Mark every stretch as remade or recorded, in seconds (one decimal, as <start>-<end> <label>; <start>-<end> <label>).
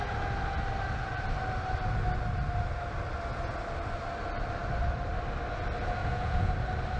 0.0-6.0 recorded; 6.0-6.5 remade; 6.5-7.0 recorded